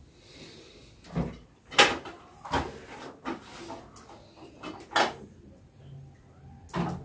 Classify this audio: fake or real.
real